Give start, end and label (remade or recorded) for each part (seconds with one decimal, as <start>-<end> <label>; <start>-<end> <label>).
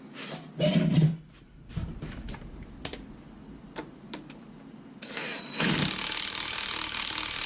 0.0-1.1 remade; 1.1-1.7 recorded; 1.7-7.5 remade